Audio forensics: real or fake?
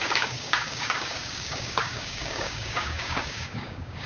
fake